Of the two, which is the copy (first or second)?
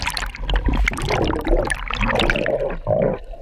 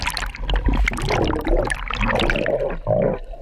first